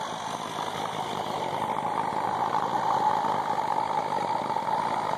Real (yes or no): yes